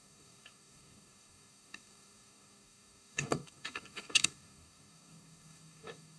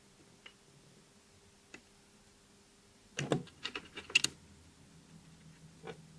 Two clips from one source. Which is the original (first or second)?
second